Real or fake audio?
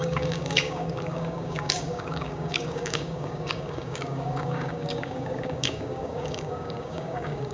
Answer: fake